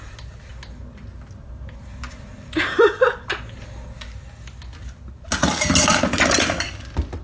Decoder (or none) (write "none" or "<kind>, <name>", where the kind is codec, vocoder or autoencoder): none